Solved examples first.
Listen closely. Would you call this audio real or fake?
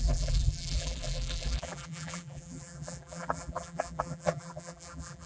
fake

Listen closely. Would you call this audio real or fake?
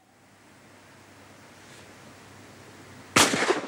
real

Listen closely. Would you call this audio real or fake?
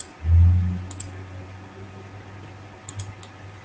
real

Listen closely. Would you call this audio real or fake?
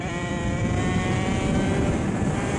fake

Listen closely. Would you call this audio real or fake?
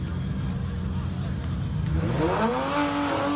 real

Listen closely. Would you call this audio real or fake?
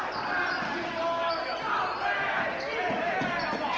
fake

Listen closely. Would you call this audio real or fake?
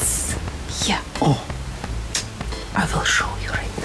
real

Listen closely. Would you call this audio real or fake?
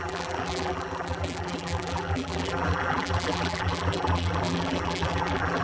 fake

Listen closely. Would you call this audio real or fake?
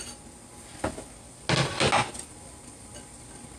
real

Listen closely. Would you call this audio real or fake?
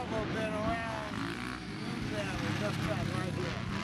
real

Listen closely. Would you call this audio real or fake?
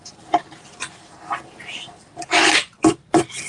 fake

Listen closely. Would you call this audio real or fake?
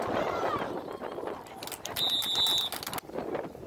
real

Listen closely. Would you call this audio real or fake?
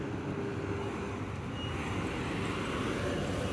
real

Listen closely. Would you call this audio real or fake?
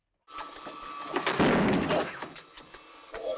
real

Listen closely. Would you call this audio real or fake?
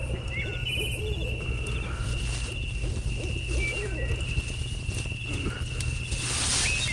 real